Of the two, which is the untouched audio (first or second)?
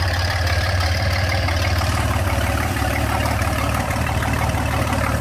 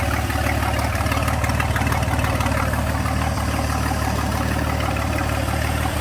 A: second